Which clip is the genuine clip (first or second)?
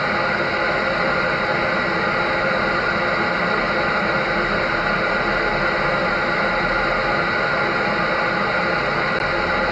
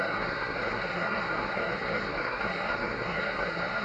first